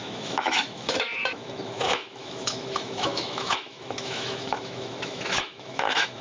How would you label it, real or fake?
fake